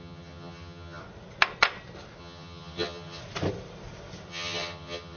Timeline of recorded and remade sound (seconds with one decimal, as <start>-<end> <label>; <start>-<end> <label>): 0.0-1.0 remade; 1.0-2.2 recorded; 2.2-3.2 remade; 3.2-4.3 recorded; 4.3-5.2 remade